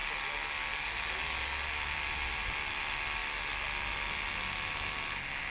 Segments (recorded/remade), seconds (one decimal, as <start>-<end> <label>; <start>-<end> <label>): 0.0-5.5 recorded